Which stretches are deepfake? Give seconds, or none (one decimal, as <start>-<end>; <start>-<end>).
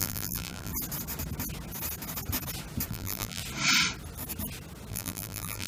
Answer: 0.0-0.7; 2.9-3.4; 4.9-5.7